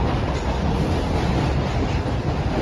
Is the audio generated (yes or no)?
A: no